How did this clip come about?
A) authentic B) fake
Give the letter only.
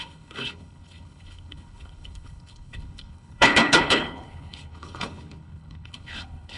B